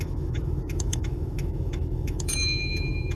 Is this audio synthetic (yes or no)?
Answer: yes